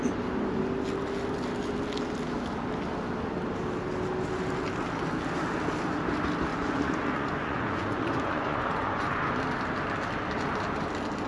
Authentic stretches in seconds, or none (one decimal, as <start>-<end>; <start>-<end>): 0.0-6.5; 9.4-11.3